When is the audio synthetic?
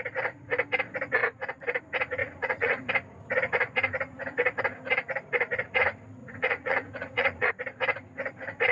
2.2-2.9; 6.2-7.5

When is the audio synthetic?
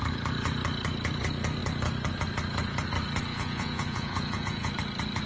3.3-4.7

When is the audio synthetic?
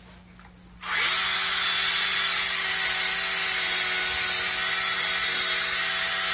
none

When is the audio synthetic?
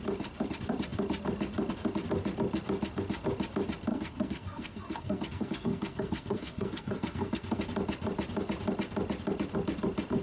3.9-7.6